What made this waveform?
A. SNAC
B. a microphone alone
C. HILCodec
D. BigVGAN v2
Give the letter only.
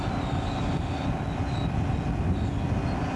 B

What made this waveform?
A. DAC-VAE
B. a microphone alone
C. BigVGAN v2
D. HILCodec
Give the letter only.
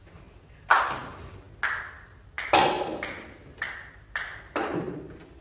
B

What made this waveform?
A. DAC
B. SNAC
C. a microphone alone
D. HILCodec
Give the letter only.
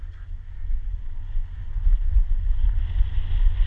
C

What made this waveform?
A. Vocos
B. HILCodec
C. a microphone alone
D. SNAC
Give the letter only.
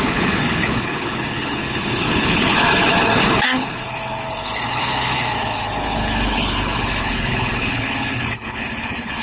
B